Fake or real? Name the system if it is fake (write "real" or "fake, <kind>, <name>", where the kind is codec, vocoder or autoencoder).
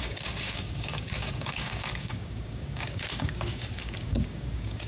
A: fake, codec, DAC